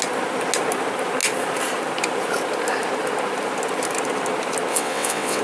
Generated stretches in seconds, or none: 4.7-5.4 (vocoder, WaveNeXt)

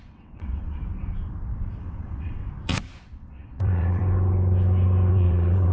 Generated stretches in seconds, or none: 0.0-0.8 (vocoder, WaveNeXt); 1.8-2.4; 3.0-4.0; 5.1-5.7

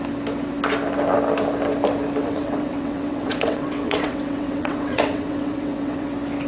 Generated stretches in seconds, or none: 2.2-6.1 (vocoder, WaveNeXt)

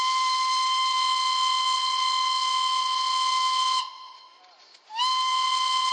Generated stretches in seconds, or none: 0.9-4.4 (vocoder, WaveNeXt); 5.3-5.9

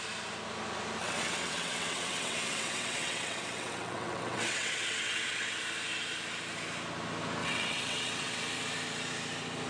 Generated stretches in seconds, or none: 1.0-5.6 (vocoder, WaveNeXt); 7.4-8.4

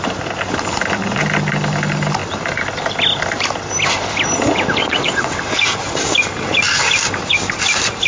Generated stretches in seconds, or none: 4.8-5.4 (vocoder, WaveNeXt)

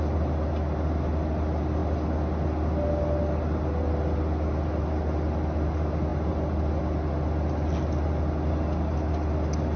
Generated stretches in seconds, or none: none

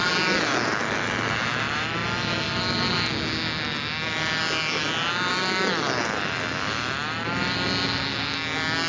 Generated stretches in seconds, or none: none